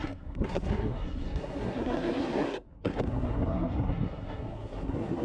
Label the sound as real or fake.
fake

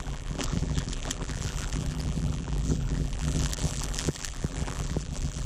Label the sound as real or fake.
fake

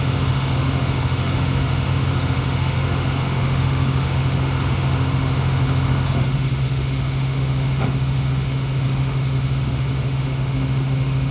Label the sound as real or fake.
fake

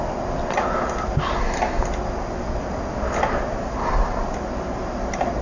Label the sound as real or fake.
real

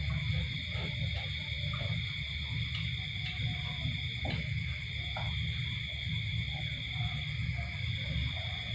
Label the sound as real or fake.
real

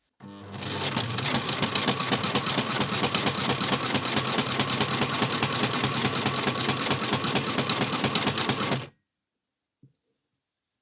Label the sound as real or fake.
real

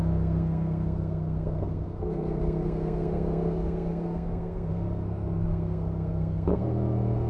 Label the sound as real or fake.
fake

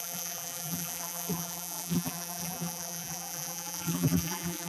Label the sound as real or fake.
fake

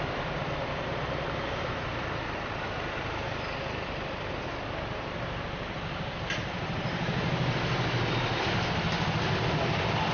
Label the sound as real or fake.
fake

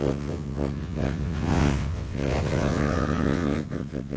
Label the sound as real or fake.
fake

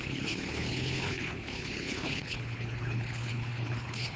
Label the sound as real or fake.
fake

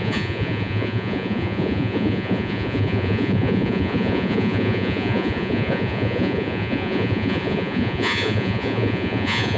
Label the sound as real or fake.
fake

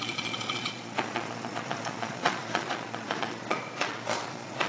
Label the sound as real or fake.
fake